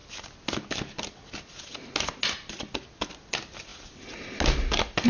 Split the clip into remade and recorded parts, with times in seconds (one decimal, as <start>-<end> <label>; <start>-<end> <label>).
0.0-5.1 recorded